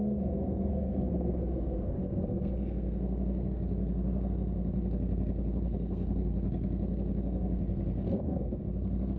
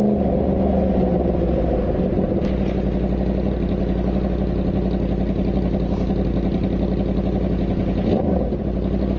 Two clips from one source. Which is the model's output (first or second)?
first